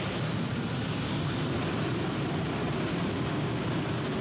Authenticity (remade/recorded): recorded